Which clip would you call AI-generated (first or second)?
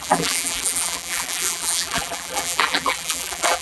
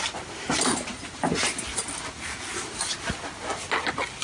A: first